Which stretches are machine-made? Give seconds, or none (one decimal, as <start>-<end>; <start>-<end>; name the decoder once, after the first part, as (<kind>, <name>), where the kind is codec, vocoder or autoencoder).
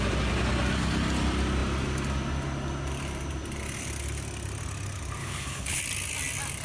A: 5.2-5.8 (codec, HILCodec)